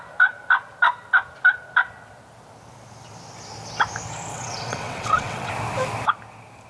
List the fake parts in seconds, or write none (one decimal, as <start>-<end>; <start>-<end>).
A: 4.3-5.5